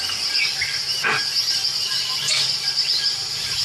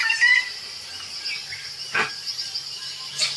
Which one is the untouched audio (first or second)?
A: second